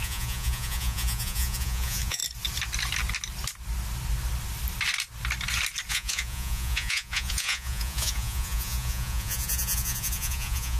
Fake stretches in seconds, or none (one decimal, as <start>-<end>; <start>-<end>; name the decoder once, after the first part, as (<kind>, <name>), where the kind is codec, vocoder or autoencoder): 0.0-2.2 (vocoder, Vocos); 5.9-10.8